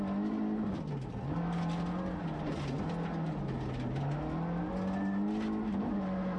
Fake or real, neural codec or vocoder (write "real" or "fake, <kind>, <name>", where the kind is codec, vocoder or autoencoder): real